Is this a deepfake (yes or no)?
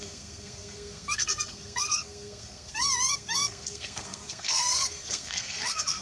yes